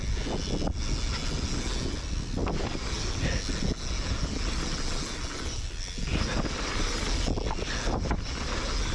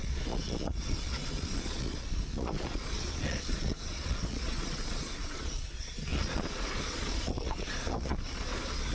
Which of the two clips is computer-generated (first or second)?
second